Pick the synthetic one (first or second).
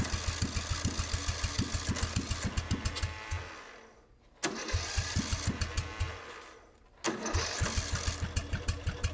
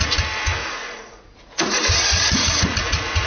second